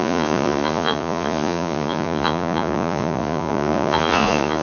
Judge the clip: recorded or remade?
remade